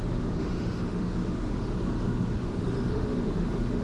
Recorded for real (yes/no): no